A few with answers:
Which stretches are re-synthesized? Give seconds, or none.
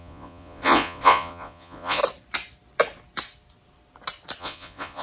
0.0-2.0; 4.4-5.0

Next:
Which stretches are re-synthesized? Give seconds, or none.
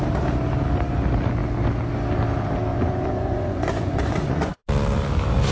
2.7-4.5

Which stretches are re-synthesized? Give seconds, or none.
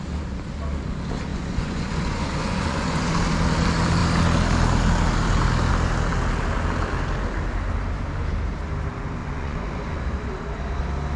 1.3-3.2; 9.2-10.0